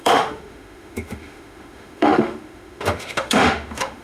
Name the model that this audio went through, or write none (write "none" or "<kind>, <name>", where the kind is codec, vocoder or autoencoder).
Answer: autoencoder, DAC-VAE